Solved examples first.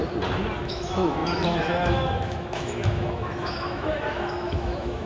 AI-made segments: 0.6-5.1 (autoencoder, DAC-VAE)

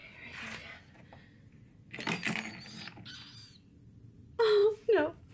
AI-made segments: none